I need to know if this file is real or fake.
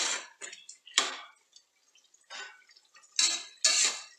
real